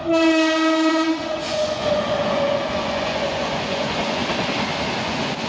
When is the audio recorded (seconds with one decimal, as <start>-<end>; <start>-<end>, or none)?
0.0-0.9; 4.2-5.0